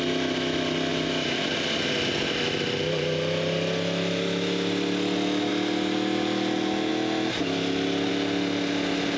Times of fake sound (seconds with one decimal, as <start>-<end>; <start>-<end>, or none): none